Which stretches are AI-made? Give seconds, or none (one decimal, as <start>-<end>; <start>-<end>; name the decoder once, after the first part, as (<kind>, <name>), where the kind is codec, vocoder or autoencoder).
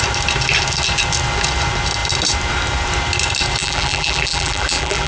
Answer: 3.6-5.1 (vocoder, BigVGAN v2)